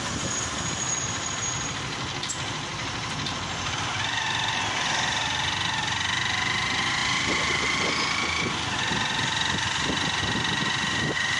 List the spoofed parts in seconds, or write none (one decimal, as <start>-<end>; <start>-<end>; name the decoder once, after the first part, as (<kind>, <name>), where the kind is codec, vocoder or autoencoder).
none